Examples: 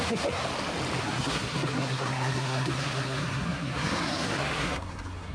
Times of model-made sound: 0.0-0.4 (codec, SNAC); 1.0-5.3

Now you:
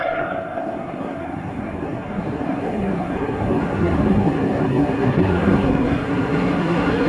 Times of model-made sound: 0.0-7.1 (codec, SNAC)

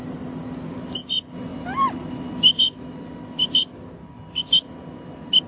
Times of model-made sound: none